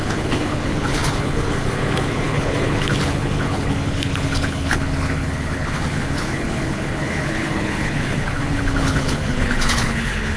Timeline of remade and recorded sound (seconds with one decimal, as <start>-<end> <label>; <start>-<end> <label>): 0.0-10.4 remade